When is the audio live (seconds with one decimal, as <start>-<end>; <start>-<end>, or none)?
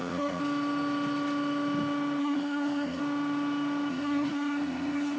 0.4-2.2; 3.0-3.9